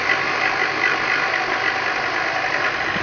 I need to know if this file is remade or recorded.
recorded